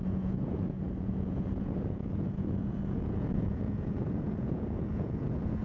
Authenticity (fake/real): fake